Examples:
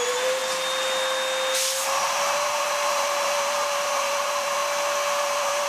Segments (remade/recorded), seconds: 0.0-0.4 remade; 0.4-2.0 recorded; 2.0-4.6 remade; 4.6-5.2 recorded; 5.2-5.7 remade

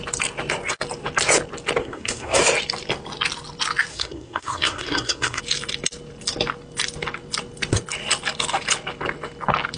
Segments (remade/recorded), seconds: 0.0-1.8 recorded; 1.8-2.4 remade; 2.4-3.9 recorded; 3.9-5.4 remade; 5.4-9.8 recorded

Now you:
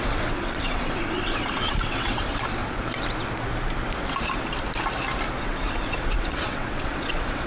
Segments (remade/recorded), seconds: 0.0-2.6 remade; 2.6-5.4 recorded; 5.4-7.5 remade

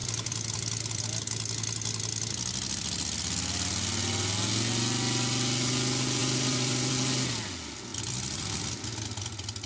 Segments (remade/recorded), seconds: 0.0-1.0 remade; 1.0-6.2 recorded; 6.2-6.9 remade; 6.9-7.9 recorded; 7.9-8.6 remade; 8.6-9.7 recorded

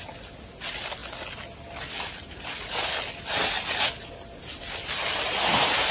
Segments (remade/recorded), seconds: 0.0-5.9 recorded

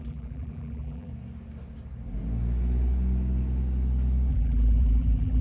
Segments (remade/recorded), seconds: 0.0-1.1 remade; 1.1-4.3 recorded; 4.3-5.4 remade

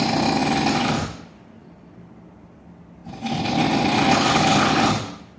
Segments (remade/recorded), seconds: 0.0-0.4 remade; 0.4-2.3 recorded; 2.3-3.0 remade; 3.0-4.7 recorded; 4.7-5.4 remade